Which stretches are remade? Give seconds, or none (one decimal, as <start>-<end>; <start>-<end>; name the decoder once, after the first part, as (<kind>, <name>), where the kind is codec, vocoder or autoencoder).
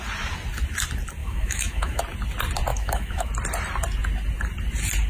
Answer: 1.2-2.0 (autoencoder, DAC-VAE); 2.7-3.3